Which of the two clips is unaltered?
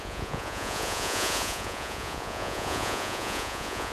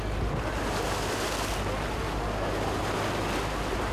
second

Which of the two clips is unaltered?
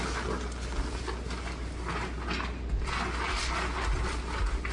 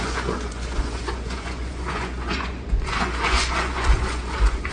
first